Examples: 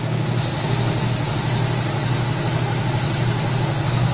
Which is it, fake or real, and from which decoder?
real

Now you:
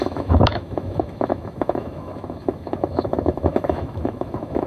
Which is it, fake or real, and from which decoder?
fake, autoencoder, DAC-VAE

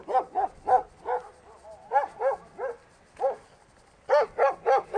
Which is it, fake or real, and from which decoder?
real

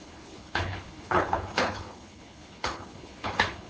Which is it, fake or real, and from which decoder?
fake, codec, HILCodec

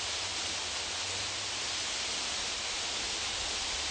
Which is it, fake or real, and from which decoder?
real